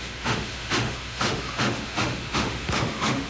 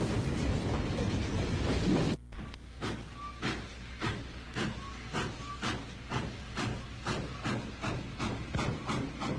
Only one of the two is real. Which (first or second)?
second